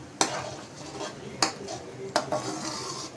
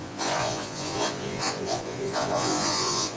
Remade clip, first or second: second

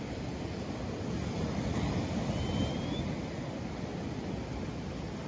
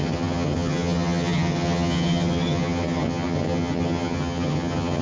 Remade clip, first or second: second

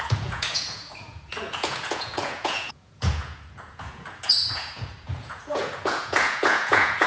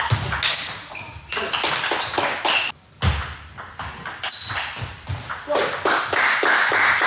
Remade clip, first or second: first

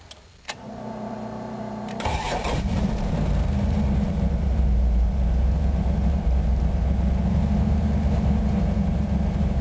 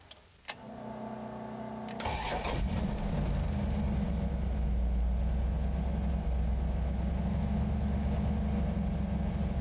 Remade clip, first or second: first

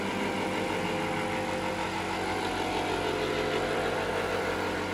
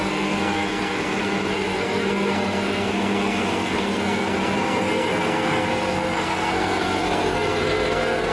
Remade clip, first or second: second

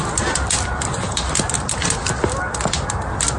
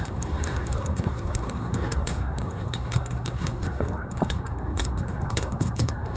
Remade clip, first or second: second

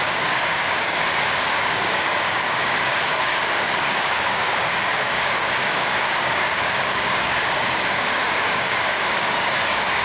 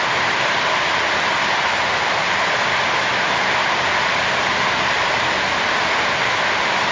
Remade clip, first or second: first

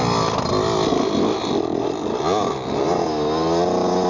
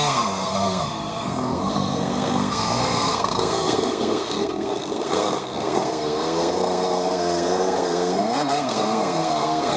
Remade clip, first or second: second